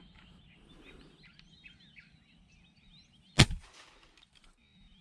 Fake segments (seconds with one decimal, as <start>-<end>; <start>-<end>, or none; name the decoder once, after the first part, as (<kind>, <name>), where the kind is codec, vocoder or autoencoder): none